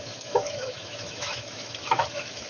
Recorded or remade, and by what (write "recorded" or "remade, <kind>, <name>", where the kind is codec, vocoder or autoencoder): remade, autoencoder, DAC-VAE